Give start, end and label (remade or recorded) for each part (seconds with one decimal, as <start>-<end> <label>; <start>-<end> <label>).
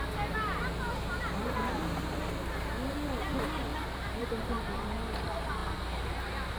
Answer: 0.0-1.1 recorded; 1.1-2.3 remade; 2.3-3.7 recorded; 3.7-4.4 remade; 4.4-6.6 recorded